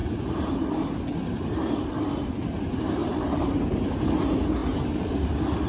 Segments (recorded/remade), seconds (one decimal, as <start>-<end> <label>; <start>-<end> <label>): 0.0-0.5 remade; 0.5-3.0 recorded; 3.0-3.9 remade; 3.9-4.6 recorded; 4.6-5.7 remade